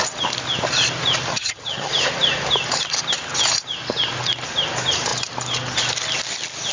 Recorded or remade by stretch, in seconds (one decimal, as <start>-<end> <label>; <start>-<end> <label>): 0.0-1.3 recorded; 1.3-1.9 remade; 1.9-6.7 recorded